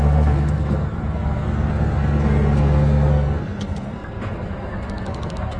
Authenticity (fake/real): fake